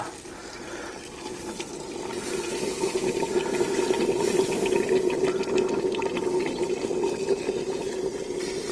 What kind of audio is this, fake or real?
real